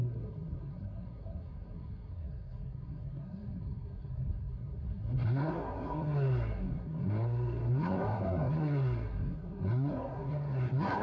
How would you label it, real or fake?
fake